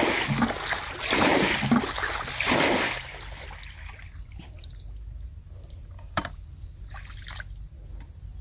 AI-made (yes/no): no